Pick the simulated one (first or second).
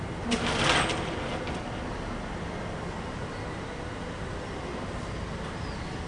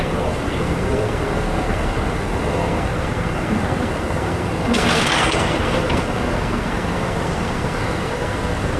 second